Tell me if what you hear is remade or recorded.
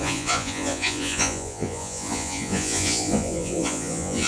remade